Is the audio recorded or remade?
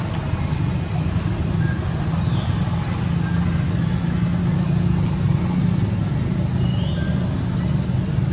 recorded